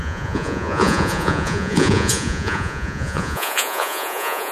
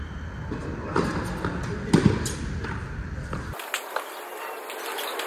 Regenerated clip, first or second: first